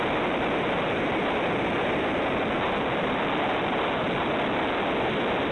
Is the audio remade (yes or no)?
no